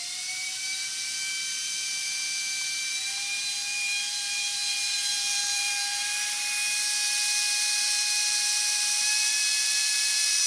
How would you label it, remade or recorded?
remade